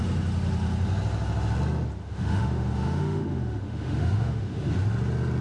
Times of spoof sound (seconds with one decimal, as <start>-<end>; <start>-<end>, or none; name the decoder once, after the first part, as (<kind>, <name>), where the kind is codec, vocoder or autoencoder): 2.0-4.7 (autoencoder, DAC-VAE)

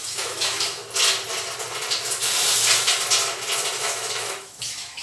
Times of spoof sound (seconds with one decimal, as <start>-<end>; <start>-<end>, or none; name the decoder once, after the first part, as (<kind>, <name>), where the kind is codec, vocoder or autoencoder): 0.0-0.8 (autoencoder, DAC-VAE); 3.8-5.0

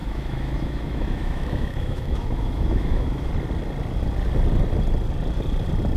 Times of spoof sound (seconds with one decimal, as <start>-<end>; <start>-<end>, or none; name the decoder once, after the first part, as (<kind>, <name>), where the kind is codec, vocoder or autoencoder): 0.0-3.3 (autoencoder, DAC-VAE)

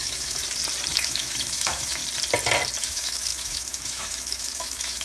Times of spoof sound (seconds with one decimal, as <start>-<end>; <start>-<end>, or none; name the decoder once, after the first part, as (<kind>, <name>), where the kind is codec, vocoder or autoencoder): 0.0-0.4 (autoencoder, DAC-VAE); 0.9-2.0; 2.8-5.0

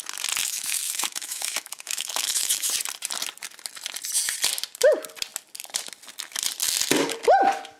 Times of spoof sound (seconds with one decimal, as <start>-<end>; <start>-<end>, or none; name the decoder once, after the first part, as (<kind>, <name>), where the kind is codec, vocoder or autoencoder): 0.4-2.7 (autoencoder, DAC-VAE)

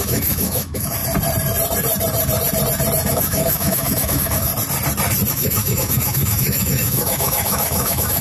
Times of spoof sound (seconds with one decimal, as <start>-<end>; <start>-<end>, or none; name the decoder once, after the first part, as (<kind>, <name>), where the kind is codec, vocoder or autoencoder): 0.0-1.0 (autoencoder, DAC-VAE); 3.1-4.5; 5.3-8.2